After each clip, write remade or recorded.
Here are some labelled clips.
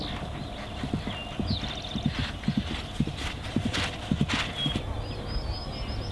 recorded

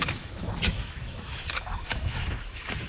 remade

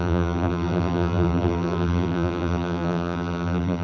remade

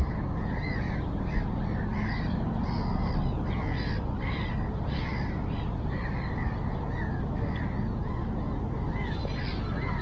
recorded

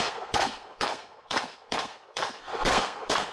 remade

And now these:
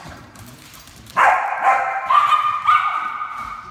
remade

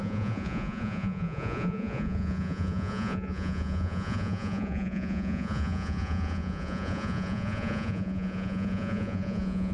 remade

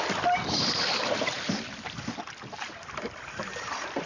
remade